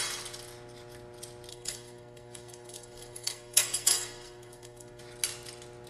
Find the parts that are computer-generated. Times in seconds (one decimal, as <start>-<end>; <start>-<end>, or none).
1.5-5.0